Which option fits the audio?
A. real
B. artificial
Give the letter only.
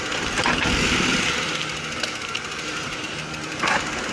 A